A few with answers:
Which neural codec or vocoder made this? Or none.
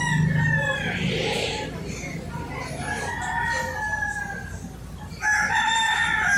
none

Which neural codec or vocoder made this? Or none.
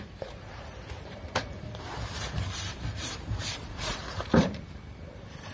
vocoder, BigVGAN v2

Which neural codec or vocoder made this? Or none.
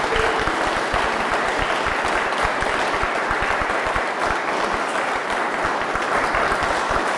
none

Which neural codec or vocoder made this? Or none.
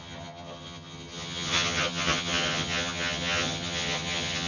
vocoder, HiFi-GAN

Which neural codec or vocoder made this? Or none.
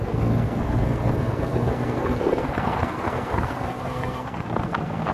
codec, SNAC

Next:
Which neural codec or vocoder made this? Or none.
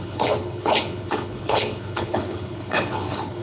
codec, HILCodec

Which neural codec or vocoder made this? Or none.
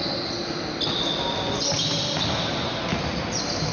none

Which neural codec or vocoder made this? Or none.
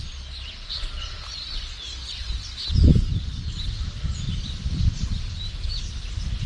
vocoder, BigVGAN v2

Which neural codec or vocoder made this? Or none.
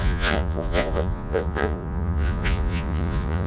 vocoder, Vocos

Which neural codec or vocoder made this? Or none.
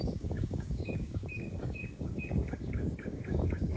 codec, DAC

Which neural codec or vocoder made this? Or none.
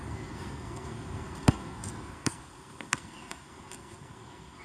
codec, SNAC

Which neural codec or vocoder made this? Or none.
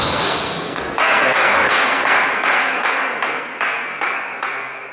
codec, SNAC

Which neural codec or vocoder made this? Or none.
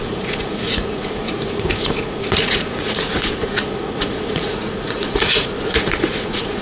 vocoder, Vocos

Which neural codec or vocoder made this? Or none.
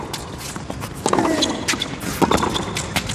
none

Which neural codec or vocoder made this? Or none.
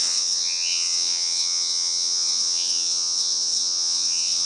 vocoder, WaveNeXt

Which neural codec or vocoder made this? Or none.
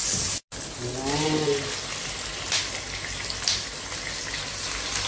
none